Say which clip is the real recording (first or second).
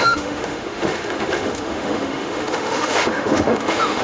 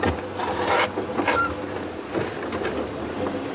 second